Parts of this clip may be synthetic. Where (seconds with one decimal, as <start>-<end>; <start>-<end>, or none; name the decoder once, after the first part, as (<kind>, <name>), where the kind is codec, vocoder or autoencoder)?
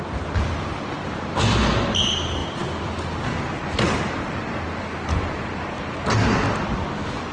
none